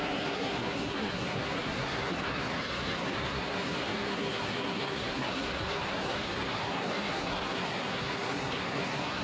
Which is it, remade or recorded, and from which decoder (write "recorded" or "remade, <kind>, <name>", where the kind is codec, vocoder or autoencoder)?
remade, codec, SNAC